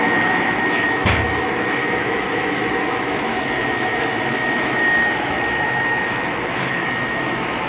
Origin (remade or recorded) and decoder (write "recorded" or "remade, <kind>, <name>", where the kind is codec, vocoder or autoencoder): remade, autoencoder, DAC-VAE